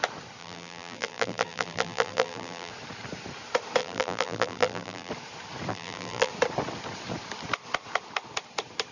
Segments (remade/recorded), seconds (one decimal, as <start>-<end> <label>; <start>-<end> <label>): 0.0-0.4 recorded; 0.4-2.7 remade; 2.7-3.8 recorded; 3.8-5.1 remade; 5.1-5.7 recorded; 5.7-6.3 remade; 6.3-8.9 recorded